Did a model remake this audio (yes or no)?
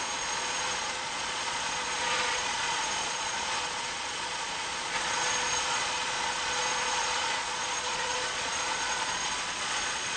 yes